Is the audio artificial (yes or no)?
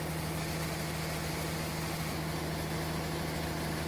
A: no